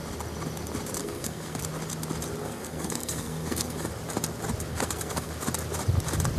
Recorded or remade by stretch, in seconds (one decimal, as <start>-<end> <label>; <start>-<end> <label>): 0.0-1.0 recorded; 1.0-1.6 remade; 1.6-2.4 recorded; 2.4-3.9 remade; 3.9-4.7 recorded; 4.7-5.3 remade; 5.3-6.4 recorded